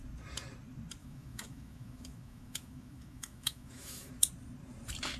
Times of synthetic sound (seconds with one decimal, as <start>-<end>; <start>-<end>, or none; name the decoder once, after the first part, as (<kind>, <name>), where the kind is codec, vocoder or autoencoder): 1.0-4.1 (autoencoder, DAC-VAE)